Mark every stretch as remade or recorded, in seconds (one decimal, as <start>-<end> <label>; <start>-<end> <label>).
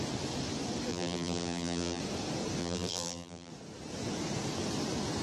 0.0-0.9 recorded; 0.9-2.0 remade; 2.0-2.6 recorded; 2.6-3.5 remade; 3.5-5.2 recorded